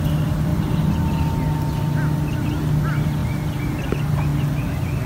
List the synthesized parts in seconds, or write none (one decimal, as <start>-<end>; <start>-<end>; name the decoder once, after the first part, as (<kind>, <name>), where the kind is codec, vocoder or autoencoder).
none